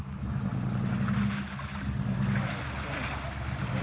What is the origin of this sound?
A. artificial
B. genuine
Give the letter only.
B